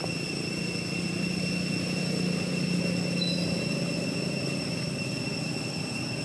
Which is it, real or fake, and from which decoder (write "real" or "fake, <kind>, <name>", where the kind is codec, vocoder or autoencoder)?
real